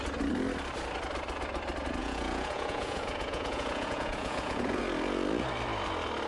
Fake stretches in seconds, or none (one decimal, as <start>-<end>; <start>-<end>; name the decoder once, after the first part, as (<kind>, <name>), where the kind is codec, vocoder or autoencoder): 2.0-4.8 (vocoder, Vocos)